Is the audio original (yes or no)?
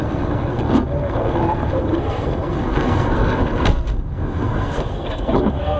no